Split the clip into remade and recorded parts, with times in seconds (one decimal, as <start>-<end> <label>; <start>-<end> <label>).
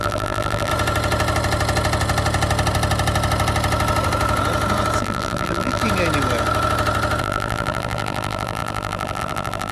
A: 0.0-0.7 remade; 0.7-5.0 recorded; 5.0-5.8 remade; 5.8-7.2 recorded; 7.2-9.7 remade